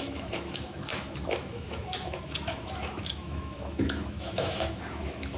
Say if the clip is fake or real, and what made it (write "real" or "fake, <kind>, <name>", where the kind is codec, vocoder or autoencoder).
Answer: fake, autoencoder, DAC-VAE